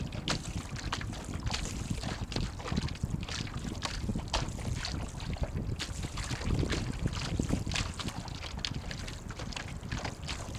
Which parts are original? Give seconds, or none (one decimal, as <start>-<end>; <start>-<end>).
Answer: 0.0-10.6